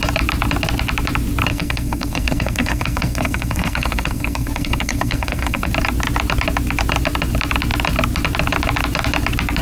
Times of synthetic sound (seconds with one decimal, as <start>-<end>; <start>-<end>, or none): 1.5-5.7